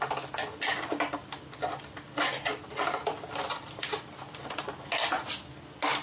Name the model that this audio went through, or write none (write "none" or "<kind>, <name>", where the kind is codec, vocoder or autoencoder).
none